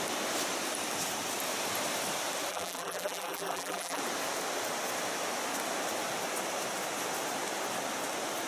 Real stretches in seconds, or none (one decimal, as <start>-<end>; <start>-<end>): 0.0-2.5; 4.0-8.5